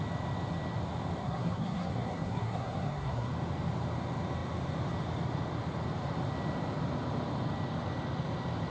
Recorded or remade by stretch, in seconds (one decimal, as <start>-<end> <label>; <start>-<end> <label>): 0.0-1.2 recorded; 1.2-3.3 remade; 3.3-8.7 recorded